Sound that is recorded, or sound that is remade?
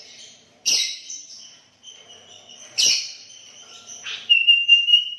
remade